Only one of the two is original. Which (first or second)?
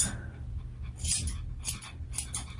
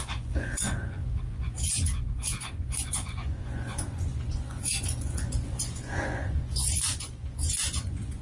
first